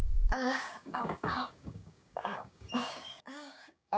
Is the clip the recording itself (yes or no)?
no